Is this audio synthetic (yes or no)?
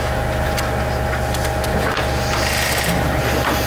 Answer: no